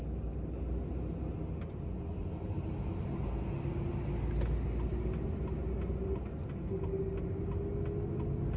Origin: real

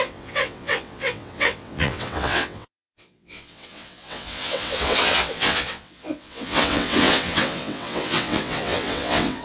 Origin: fake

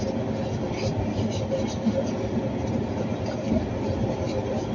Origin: real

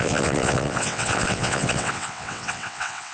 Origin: fake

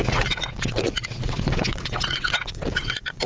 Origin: fake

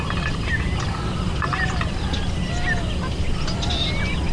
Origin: real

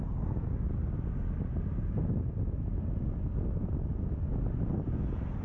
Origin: real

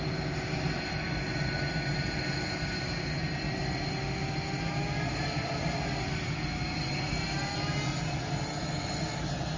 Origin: real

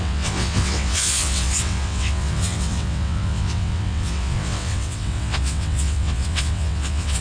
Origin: fake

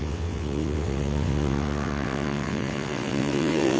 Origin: fake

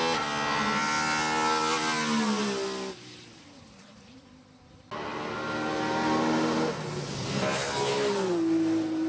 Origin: real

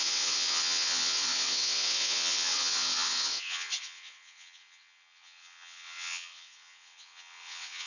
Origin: fake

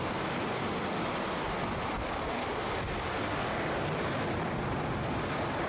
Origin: real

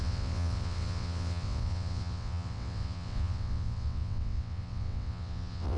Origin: fake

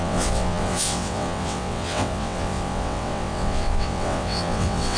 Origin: fake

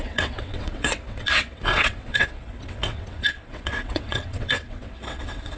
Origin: fake